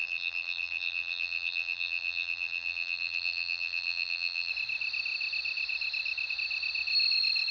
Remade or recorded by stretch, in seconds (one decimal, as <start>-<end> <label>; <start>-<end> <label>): 0.0-4.5 remade; 4.5-7.5 recorded